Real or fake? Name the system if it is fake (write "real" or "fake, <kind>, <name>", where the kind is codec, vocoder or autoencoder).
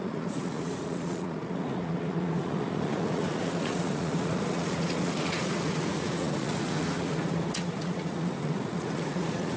fake, vocoder, Vocos